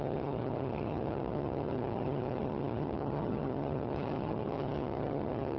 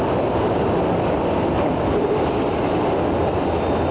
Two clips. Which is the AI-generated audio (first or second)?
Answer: first